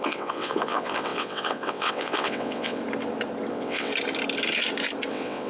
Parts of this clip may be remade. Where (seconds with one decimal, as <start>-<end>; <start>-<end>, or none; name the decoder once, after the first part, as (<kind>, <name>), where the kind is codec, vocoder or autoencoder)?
0.0-2.8 (vocoder, WaveNeXt); 3.5-3.9; 5.1-5.5

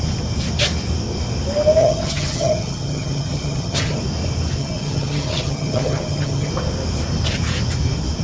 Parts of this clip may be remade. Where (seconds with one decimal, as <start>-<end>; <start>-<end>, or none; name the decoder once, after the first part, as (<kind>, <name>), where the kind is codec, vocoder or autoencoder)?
1.8-4.0 (vocoder, HiFi-GAN); 4.6-6.5

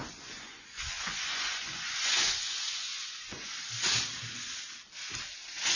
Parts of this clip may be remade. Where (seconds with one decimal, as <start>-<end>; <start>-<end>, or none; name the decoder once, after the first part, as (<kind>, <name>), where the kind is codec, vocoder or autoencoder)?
0.0-3.5 (vocoder, Vocos)

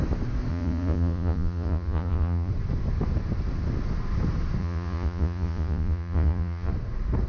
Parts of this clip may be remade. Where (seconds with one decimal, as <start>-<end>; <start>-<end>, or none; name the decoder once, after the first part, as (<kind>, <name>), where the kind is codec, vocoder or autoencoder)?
0.5-2.5 (vocoder, Vocos); 4.6-6.7